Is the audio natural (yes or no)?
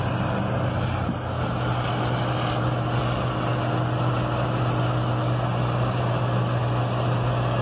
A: yes